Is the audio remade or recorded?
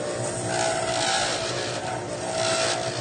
recorded